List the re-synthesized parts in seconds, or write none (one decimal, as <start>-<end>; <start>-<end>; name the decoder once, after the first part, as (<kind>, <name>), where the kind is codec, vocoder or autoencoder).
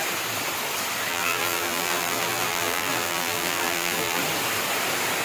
1.1-4.2 (vocoder, BigVGAN v2)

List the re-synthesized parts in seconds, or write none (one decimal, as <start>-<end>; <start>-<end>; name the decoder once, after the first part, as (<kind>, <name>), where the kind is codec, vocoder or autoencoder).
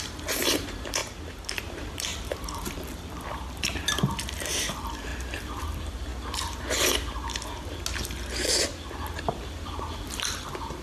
0.0-1.0 (vocoder, BigVGAN v2); 1.6-6.1; 9.3-10.8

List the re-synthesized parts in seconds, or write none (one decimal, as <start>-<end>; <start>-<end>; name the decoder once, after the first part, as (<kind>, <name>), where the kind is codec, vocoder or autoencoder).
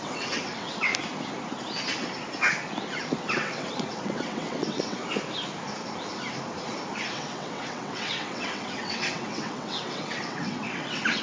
0.0-0.9 (vocoder, WaveNeXt); 3.2-5.0; 7.1-11.2